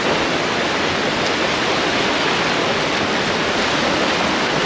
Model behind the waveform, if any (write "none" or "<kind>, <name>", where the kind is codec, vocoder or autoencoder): none